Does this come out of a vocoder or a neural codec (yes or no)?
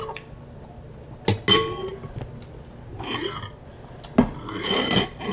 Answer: no